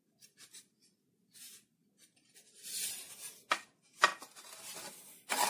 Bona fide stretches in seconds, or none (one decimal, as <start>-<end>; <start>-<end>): 0.0-5.5